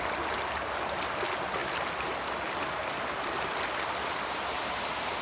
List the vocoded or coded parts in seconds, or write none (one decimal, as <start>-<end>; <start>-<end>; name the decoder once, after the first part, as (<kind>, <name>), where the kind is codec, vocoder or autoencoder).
none